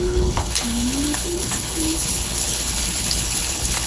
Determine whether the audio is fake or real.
fake